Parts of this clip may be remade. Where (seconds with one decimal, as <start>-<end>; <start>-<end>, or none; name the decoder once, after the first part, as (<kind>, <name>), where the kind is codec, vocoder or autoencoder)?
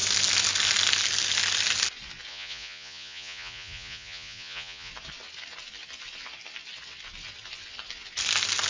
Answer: 2.3-4.9 (vocoder, Vocos)